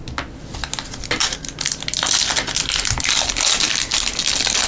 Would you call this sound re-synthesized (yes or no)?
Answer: no